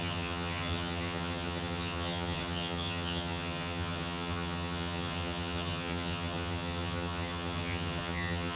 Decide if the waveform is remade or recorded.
remade